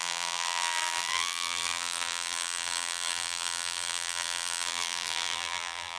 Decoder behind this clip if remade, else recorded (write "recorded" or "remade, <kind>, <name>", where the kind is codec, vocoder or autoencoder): remade, vocoder, BigVGAN v2